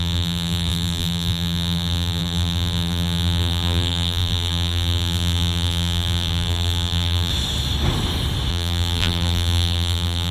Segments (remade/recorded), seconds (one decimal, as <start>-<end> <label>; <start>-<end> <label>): 0.0-7.3 remade; 7.3-8.5 recorded; 8.5-10.3 remade